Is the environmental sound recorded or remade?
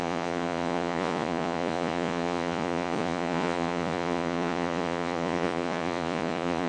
remade